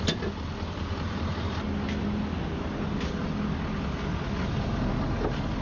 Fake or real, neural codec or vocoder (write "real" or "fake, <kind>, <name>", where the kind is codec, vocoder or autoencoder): real